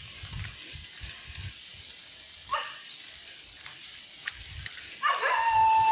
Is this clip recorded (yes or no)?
yes